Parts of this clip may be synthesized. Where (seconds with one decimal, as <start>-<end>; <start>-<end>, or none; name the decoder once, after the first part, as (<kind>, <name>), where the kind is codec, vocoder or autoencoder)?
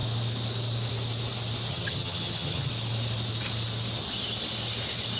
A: 1.7-2.7 (vocoder, HiFi-GAN)